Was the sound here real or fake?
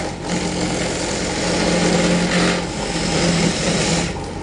real